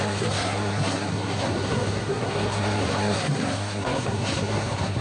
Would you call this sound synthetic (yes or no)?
yes